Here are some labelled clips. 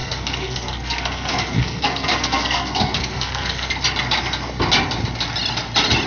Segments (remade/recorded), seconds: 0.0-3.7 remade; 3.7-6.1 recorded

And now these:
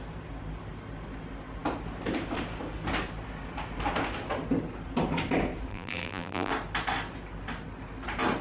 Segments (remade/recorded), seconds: 0.0-5.7 recorded; 5.7-6.5 remade; 6.5-8.4 recorded

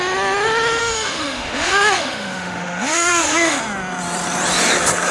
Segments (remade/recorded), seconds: 0.0-0.8 recorded; 0.8-3.6 remade; 3.6-5.1 recorded

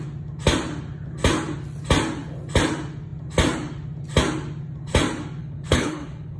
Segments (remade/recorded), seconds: 0.0-5.4 recorded; 5.4-6.4 remade

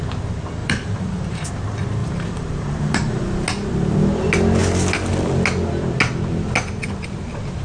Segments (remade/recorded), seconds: 0.0-0.6 recorded; 0.6-1.5 remade; 1.5-2.0 recorded; 2.0-3.2 remade; 3.2-7.6 recorded

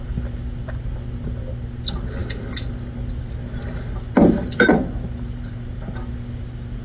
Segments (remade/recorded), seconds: 0.0-6.8 recorded

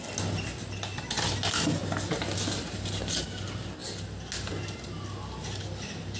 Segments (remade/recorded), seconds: 0.0-6.2 recorded

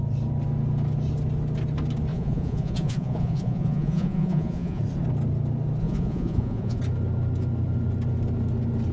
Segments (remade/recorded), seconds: 0.0-2.1 recorded; 2.1-4.8 remade; 4.8-5.8 recorded; 5.8-6.8 remade; 6.8-8.9 recorded